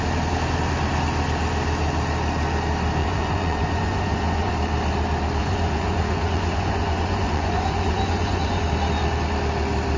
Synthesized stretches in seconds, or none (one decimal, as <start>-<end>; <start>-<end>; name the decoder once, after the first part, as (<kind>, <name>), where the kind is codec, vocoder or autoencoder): 3.0-4.5 (vocoder, Vocos); 5.4-8.7